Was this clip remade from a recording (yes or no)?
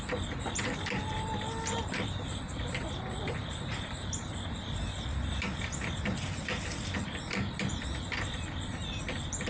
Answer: yes